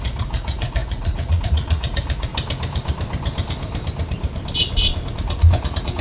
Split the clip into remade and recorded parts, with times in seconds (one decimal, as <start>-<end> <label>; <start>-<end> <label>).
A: 0.0-2.3 remade; 2.3-5.1 recorded; 5.1-6.0 remade